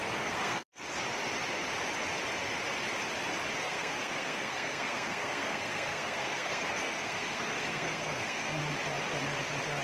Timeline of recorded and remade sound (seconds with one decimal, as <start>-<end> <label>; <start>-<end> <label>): 0.0-0.8 remade; 0.8-3.6 recorded; 3.6-8.6 remade; 8.6-9.8 recorded